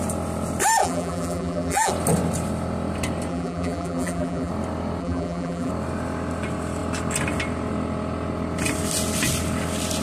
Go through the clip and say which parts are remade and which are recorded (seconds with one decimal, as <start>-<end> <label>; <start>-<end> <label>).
0.0-0.8 recorded; 0.8-1.9 remade; 1.9-3.3 recorded; 3.3-4.5 remade; 4.5-5.0 recorded; 5.0-5.7 remade; 5.7-10.0 recorded